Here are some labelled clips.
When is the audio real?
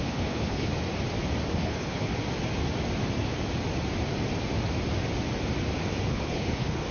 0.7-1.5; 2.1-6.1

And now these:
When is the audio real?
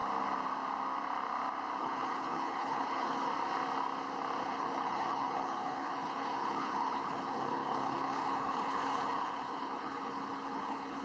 0.0-1.8; 3.3-4.4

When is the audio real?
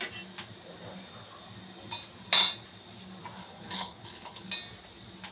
0.0-3.4; 4.5-5.3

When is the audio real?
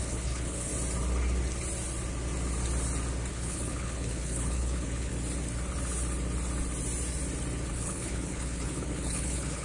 0.7-3.3; 5.1-7.7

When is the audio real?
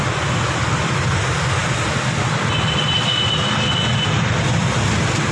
0.0-5.3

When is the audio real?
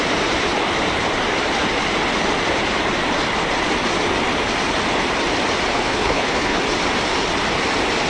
0.0-5.7; 6.6-8.1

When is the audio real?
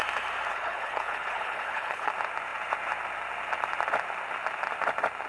0.0-0.5; 2.1-5.3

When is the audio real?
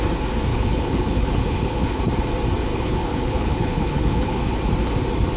0.0-0.5; 2.0-2.7; 4.5-5.4